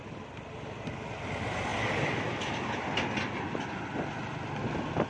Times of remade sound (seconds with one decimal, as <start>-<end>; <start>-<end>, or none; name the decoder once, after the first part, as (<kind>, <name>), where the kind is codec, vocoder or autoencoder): none